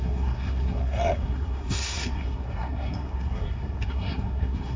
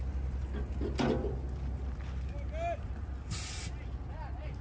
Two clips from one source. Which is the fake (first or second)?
first